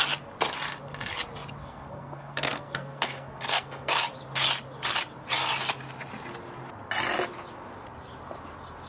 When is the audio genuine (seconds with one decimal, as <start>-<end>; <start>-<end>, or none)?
0.0-1.6; 4.0-8.9